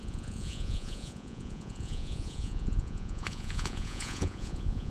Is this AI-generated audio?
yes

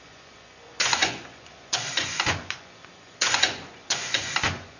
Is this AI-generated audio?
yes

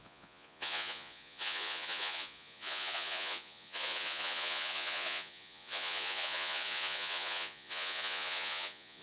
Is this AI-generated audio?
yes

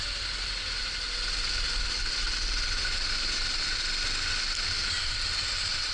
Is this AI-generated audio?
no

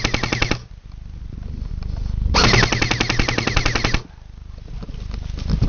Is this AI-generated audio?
no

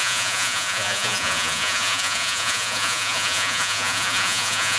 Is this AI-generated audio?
yes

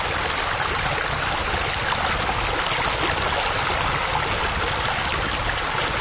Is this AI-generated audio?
no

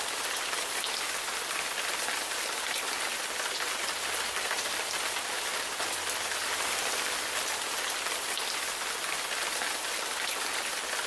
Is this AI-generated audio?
no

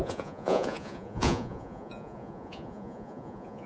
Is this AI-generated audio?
yes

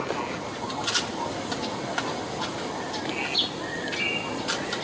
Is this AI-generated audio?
no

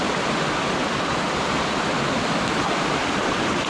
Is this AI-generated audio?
no